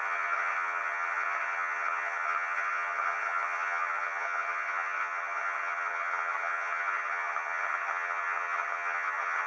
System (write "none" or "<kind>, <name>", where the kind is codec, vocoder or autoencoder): vocoder, HiFi-GAN